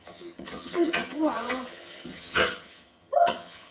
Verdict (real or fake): fake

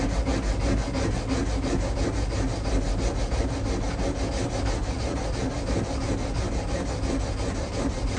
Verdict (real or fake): real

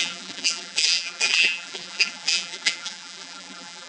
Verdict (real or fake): fake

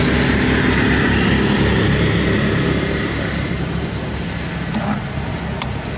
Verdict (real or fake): real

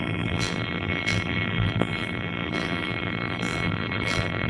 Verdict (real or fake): fake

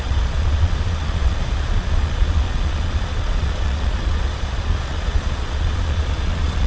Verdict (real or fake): fake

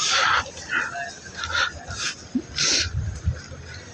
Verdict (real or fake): real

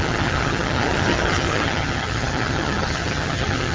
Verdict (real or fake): fake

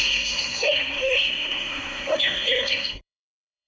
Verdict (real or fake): fake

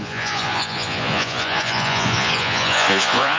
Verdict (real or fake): fake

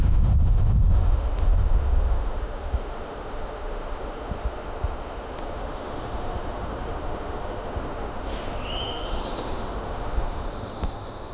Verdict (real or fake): fake